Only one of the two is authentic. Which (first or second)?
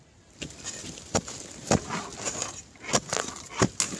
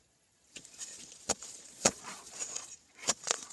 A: first